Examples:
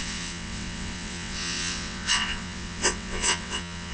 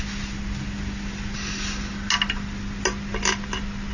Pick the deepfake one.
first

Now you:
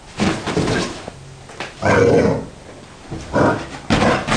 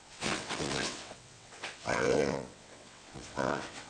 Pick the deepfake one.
second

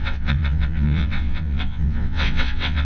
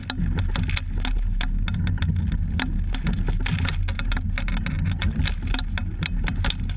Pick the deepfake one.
first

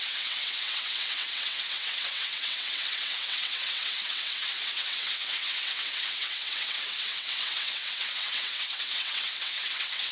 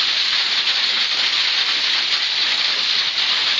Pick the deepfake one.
first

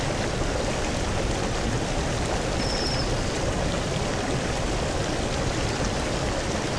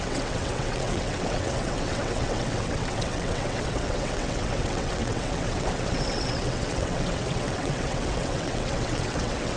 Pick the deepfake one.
second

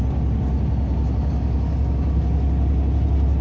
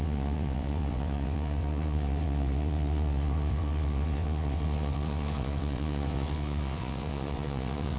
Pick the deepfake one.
second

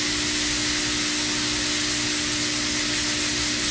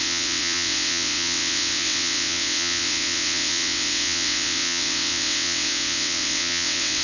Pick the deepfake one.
second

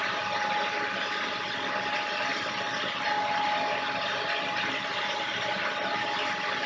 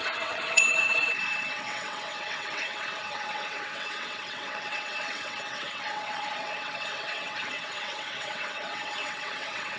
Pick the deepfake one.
second